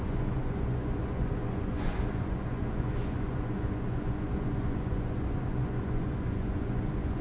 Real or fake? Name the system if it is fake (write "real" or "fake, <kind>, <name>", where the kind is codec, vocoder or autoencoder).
fake, vocoder, Vocos